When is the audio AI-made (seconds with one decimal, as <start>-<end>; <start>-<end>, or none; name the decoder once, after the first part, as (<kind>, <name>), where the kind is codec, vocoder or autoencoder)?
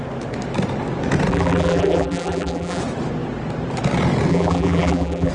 1.3-2.8 (vocoder, BigVGAN v2); 4.3-5.3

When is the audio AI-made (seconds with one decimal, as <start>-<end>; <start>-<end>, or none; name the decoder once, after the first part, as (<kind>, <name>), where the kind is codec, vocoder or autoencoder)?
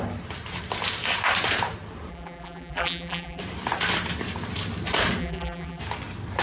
2.1-3.4 (vocoder, BigVGAN v2); 5.2-5.8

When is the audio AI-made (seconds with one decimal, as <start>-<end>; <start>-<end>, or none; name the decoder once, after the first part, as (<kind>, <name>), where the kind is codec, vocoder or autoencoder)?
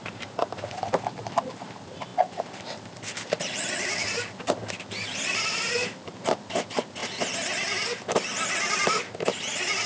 0.0-7.0 (vocoder, BigVGAN v2)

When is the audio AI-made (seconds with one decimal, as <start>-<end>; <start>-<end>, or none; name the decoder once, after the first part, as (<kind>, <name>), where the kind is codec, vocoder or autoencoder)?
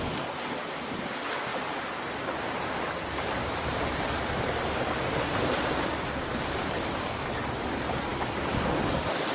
1.5-2.1 (vocoder, BigVGAN v2); 3.4-7.4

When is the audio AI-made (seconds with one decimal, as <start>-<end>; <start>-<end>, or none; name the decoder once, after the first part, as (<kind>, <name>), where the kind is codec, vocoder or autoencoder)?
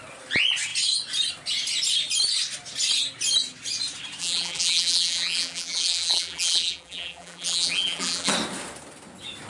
4.2-8.3 (vocoder, BigVGAN v2)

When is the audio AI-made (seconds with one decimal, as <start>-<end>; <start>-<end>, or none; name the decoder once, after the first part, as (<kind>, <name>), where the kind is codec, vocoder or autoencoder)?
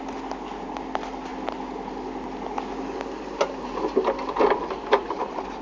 none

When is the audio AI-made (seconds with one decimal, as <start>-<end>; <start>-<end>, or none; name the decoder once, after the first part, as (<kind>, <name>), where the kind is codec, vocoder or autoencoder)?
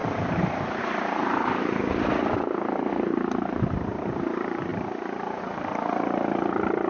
0.0-1.8 (vocoder, BigVGAN v2); 2.9-6.9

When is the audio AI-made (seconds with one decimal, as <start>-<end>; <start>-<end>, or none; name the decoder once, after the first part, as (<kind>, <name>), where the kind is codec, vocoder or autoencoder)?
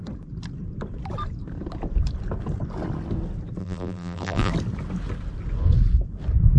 3.6-4.5 (vocoder, BigVGAN v2)